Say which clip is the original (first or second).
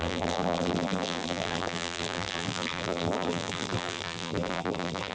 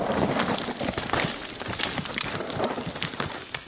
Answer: second